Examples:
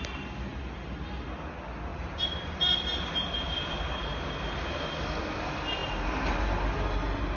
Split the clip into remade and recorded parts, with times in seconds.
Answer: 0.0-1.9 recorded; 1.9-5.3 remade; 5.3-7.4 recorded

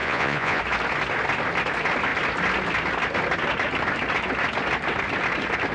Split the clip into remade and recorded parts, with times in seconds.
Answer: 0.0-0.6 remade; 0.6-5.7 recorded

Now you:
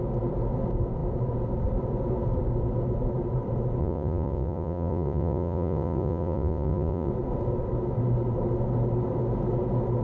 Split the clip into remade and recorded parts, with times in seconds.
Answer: 0.0-3.8 recorded; 3.8-7.1 remade; 7.1-10.0 recorded